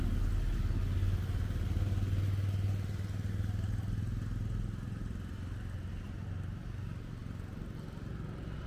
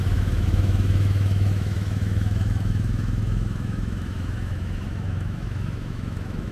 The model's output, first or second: second